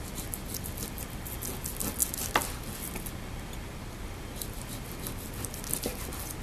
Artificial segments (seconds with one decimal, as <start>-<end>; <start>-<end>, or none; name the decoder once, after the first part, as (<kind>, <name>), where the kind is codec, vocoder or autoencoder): none